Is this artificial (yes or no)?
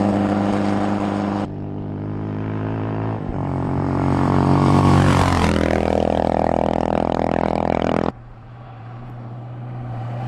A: yes